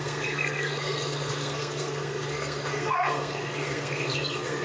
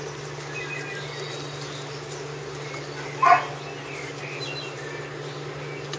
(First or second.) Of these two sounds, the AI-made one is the first